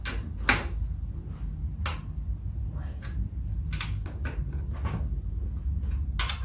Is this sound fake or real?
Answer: real